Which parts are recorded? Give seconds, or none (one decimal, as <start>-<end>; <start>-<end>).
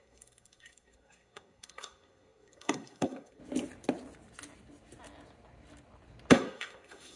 3.4-6.3